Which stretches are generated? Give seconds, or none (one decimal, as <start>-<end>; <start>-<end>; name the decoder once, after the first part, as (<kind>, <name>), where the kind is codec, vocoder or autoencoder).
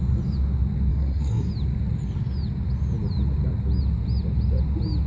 0.9-1.5 (codec, SNAC)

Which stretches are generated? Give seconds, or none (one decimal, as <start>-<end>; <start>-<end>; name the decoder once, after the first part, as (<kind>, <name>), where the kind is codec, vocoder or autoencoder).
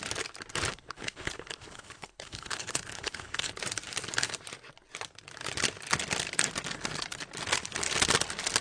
0.7-3.5 (codec, HILCodec)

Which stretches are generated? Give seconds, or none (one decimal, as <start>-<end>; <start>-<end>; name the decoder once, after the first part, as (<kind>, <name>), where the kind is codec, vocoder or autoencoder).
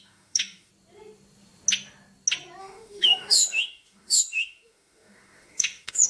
0.0-0.7 (autoencoder, DAC-VAE); 2.6-6.1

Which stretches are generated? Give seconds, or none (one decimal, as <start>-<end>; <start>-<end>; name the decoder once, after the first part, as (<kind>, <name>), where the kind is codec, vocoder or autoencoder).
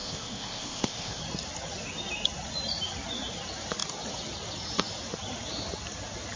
0.0-1.2 (codec, ZipCodec)